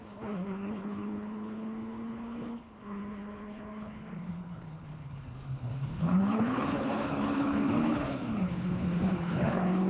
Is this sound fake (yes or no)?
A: yes